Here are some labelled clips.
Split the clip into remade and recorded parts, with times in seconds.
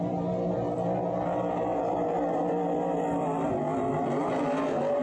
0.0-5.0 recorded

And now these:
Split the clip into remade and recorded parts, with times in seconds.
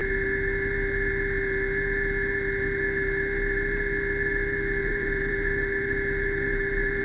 0.0-4.8 recorded; 4.8-7.0 remade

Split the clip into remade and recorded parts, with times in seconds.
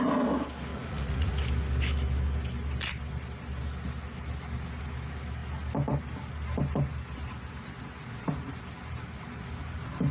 0.0-0.7 recorded; 0.7-1.3 remade; 1.3-10.1 recorded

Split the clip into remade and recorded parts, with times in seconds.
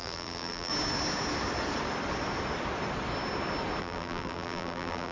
0.0-0.7 remade; 0.7-3.8 recorded; 3.8-5.1 remade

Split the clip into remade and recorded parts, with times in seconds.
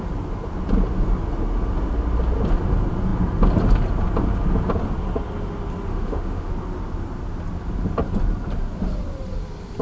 0.0-5.9 recorded; 5.9-6.5 remade; 6.5-9.8 recorded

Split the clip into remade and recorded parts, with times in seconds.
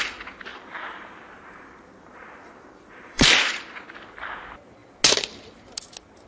0.0-0.5 recorded; 0.5-3.3 remade; 3.3-6.3 recorded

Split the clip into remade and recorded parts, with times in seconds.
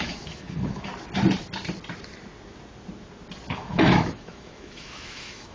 0.0-0.9 remade; 0.9-3.5 recorded; 3.5-5.5 remade